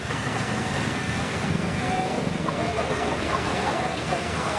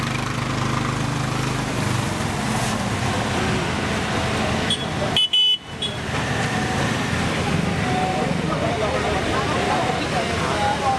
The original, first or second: second